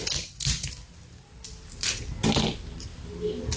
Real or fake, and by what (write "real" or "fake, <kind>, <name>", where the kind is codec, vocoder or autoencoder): real